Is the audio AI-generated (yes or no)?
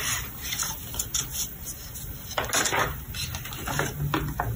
no